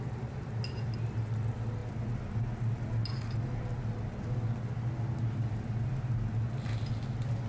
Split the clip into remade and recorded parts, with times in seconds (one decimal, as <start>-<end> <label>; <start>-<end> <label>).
0.0-7.5 recorded

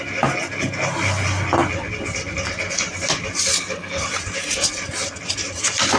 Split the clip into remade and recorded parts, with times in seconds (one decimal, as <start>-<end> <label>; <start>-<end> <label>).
0.0-3.5 recorded; 3.5-4.0 remade; 4.0-6.0 recorded

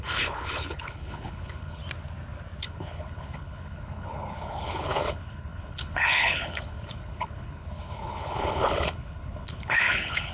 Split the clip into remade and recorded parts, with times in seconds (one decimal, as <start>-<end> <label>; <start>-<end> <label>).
0.0-1.8 remade; 1.8-2.6 recorded; 2.6-10.3 remade

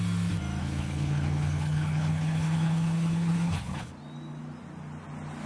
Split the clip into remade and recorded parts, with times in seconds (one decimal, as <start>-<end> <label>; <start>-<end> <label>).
0.0-0.6 recorded; 0.6-3.9 remade; 3.9-5.5 recorded

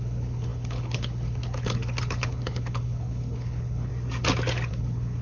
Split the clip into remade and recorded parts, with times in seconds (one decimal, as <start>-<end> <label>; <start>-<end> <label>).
0.0-3.9 remade; 3.9-4.7 recorded; 4.7-5.2 remade

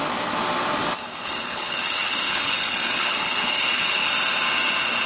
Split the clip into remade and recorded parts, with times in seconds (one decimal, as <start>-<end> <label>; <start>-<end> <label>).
0.0-1.0 recorded; 1.0-4.1 remade; 4.1-5.1 recorded